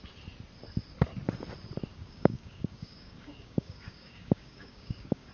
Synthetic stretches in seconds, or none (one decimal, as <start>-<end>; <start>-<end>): 1.9-5.3